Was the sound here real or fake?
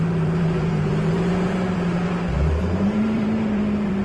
fake